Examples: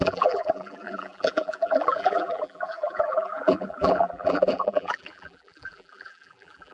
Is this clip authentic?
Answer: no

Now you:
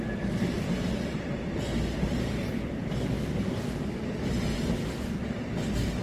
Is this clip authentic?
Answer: yes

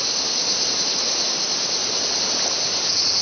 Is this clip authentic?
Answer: yes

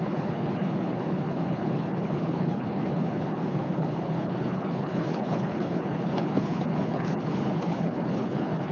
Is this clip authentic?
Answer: no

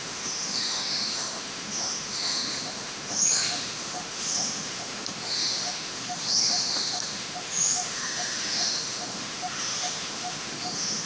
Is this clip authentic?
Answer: no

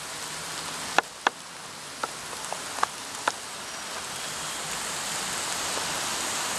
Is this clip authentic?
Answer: yes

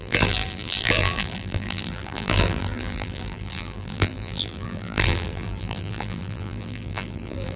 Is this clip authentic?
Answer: no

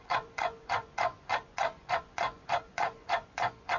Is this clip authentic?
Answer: no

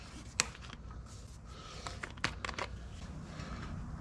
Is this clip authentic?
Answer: yes